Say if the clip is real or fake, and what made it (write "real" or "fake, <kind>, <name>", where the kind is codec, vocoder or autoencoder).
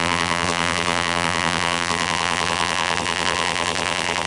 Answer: fake, vocoder, BigVGAN v2